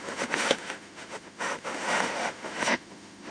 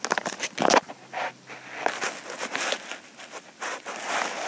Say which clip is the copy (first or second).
first